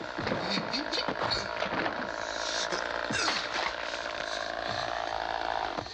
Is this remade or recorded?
recorded